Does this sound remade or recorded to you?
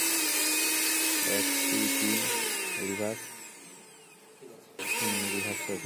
recorded